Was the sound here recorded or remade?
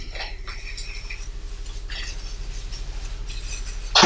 recorded